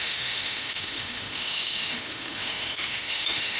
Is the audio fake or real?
fake